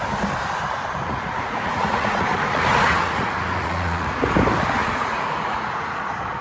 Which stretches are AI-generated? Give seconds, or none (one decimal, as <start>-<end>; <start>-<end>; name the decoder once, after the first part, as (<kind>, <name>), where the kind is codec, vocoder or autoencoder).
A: 1.0-4.2 (vocoder, Vocos); 4.8-6.4